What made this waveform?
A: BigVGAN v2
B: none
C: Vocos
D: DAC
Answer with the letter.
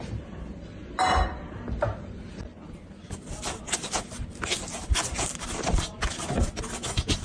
B